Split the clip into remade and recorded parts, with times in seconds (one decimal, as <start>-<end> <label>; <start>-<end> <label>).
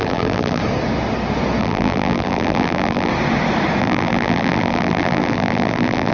0.0-0.6 remade; 0.6-1.6 recorded; 1.6-3.1 remade; 3.1-3.8 recorded; 3.8-6.1 remade